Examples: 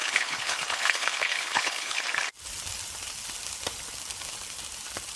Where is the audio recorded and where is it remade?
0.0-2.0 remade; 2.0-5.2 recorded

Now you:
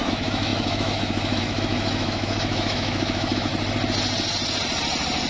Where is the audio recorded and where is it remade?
0.0-3.5 remade; 3.5-5.3 recorded

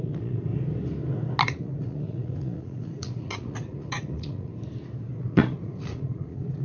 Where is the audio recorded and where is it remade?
0.0-0.5 remade; 0.5-1.4 recorded; 1.4-4.5 remade; 4.5-5.2 recorded; 5.2-6.6 remade

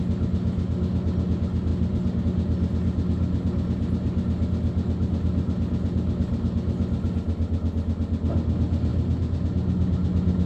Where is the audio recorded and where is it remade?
0.0-1.7 recorded; 1.7-2.2 remade; 2.2-10.5 recorded

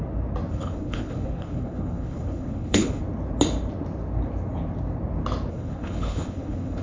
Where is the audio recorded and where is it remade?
0.0-0.5 recorded; 0.5-3.0 remade; 3.0-5.5 recorded; 5.5-6.8 remade

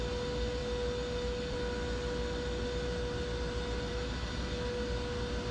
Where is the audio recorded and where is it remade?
0.0-5.5 recorded

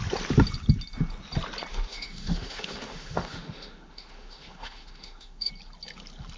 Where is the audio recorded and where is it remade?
0.0-1.7 recorded; 1.7-5.5 remade; 5.5-6.4 recorded

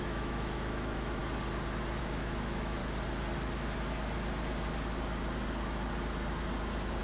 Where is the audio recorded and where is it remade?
0.0-1.2 remade; 1.2-2.0 recorded; 2.0-2.8 remade; 2.8-7.0 recorded